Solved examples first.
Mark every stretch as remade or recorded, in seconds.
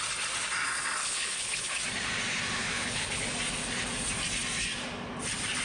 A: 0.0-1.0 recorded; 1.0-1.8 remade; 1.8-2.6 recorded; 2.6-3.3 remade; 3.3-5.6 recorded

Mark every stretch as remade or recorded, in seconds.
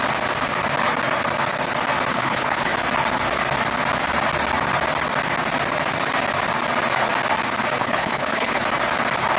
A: 0.0-2.1 recorded; 2.1-2.7 remade; 2.7-7.8 recorded; 7.8-8.6 remade; 8.6-9.4 recorded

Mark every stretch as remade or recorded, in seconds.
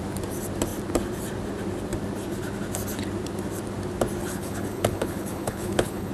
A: 0.0-4.2 recorded; 4.2-6.1 remade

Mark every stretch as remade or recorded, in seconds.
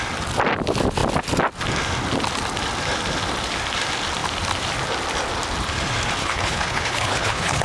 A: 0.0-6.2 recorded; 6.2-7.6 remade